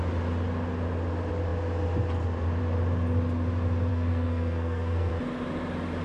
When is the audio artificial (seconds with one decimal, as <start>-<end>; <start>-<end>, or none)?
3.9-5.1